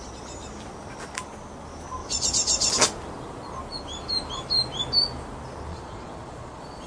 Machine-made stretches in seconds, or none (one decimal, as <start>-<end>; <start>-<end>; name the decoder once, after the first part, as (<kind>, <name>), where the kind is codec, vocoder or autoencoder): 2.0-2.7 (vocoder, Vocos); 5.7-6.9

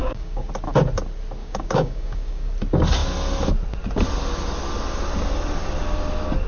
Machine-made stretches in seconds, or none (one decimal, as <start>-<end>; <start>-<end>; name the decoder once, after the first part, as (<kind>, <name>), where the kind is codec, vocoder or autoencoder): 0.0-0.5 (codec, DAC); 1.4-2.5